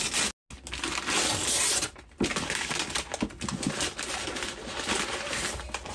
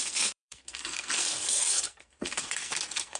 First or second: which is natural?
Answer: first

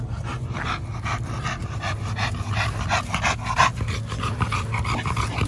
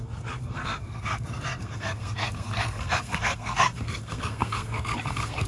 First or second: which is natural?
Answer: first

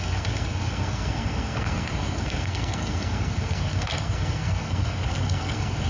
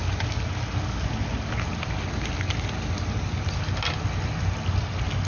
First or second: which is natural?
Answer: second